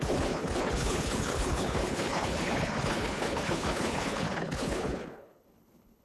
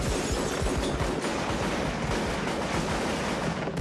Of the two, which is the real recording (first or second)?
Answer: second